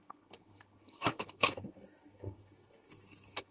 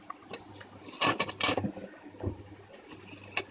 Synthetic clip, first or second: first